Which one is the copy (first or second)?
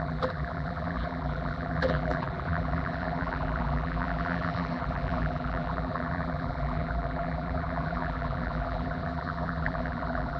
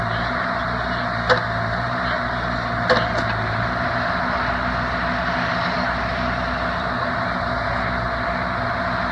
first